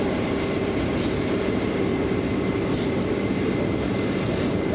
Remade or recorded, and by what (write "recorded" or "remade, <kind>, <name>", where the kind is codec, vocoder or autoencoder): remade, vocoder, BigVGAN v2